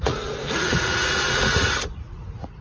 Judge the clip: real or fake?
fake